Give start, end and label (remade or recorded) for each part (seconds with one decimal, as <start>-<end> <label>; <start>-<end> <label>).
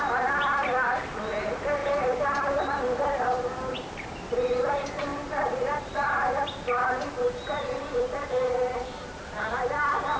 0.0-10.2 recorded